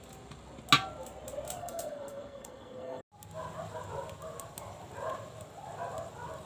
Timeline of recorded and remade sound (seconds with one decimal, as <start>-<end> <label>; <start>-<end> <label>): 0.0-1.6 recorded; 1.6-3.0 remade; 3.0-6.5 recorded